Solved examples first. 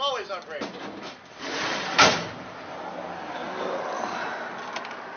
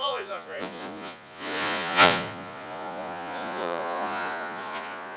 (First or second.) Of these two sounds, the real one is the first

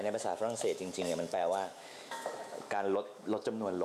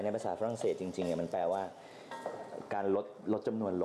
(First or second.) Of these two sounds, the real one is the second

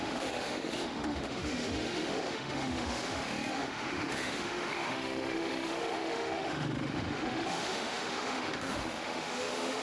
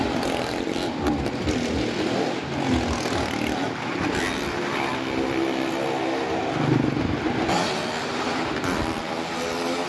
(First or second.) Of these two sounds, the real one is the second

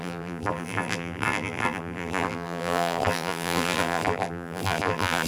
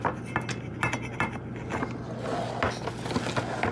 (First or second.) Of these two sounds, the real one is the second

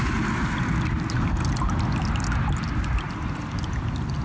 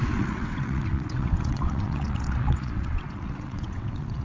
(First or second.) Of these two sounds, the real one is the first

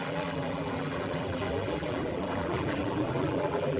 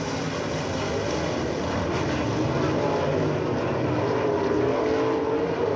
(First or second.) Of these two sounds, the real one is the second